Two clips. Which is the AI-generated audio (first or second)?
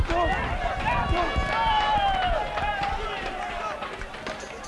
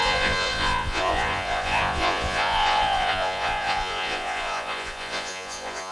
second